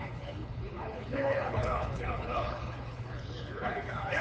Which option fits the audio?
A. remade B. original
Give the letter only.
A